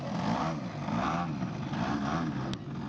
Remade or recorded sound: recorded